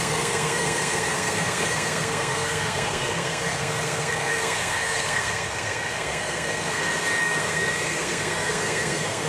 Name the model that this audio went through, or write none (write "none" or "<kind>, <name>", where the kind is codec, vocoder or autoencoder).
codec, SNAC